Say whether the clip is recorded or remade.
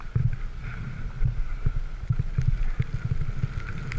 recorded